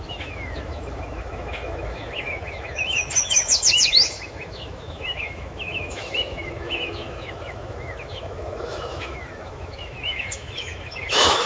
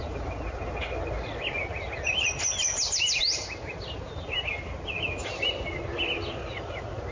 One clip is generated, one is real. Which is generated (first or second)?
first